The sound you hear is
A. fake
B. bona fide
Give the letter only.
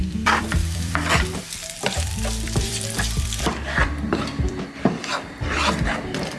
A